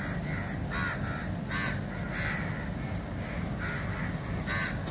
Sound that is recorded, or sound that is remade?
recorded